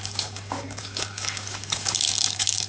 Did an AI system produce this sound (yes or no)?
yes